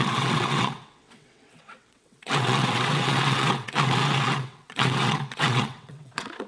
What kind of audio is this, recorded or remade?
remade